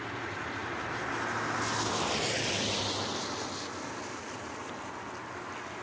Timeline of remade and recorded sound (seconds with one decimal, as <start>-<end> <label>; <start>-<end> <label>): 0.0-5.8 recorded